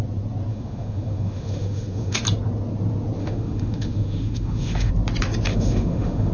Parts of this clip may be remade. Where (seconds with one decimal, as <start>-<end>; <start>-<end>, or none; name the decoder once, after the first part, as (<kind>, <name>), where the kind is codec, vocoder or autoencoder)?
0.5-2.2 (autoencoder, DAC-VAE); 3.2-4.9; 5.5-6.3